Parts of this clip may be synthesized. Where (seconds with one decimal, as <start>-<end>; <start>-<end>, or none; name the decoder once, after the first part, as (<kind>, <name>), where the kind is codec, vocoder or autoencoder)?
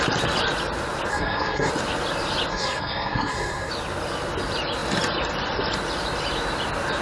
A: 1.1-1.7 (codec, SNAC); 2.5-3.7